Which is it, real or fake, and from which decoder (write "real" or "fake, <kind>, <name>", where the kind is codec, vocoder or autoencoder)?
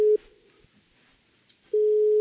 real